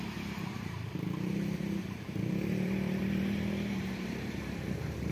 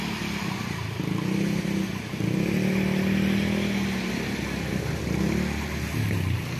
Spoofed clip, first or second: first